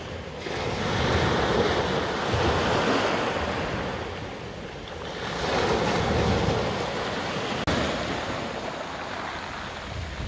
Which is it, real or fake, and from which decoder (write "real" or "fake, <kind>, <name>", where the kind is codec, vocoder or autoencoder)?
real